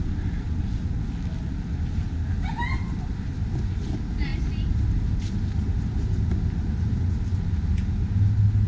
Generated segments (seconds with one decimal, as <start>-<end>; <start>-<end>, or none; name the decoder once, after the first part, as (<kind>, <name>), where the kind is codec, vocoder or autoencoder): none

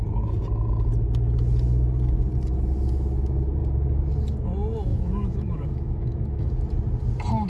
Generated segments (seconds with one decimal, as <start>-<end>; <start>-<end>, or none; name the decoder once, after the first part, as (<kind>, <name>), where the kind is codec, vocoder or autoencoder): 4.9-6.5 (autoencoder, DAC-VAE)